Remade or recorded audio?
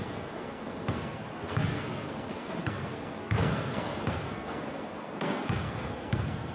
remade